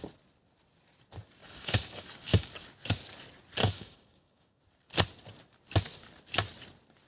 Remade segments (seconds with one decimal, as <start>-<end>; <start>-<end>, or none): 1.4-2.5; 3.6-4.6